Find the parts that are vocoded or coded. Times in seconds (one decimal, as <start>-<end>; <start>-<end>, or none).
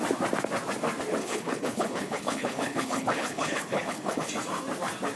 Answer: 1.2-4.3